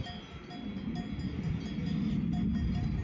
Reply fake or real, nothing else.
real